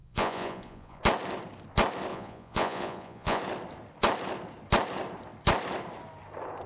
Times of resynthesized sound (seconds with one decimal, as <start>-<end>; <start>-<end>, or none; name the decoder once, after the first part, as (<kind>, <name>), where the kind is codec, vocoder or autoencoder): 0.0-1.0 (vocoder, Vocos); 2.1-3.4